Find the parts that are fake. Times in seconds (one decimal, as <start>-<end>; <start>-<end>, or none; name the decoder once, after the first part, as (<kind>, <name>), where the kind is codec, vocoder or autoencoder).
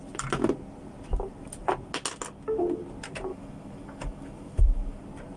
3.3-5.0 (autoencoder, DAC-VAE)